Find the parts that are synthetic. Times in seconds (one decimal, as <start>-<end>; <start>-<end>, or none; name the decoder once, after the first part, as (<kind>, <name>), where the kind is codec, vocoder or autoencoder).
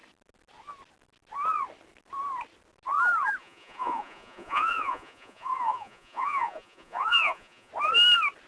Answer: 3.4-7.7 (vocoder, Vocos)